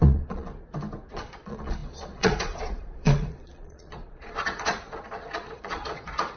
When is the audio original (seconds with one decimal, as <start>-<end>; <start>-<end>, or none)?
0.5-1.1